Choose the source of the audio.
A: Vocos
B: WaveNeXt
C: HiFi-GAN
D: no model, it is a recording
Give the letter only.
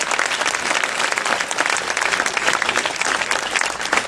D